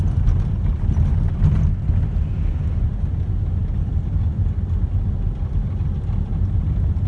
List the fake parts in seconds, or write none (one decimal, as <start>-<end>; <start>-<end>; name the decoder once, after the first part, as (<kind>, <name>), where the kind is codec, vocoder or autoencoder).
none